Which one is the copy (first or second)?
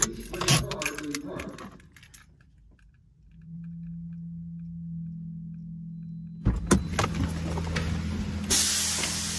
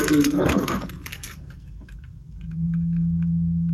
second